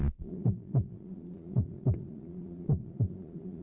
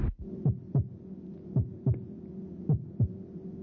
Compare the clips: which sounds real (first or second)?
second